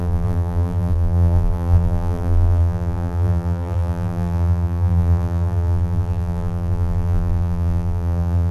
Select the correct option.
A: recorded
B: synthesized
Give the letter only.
B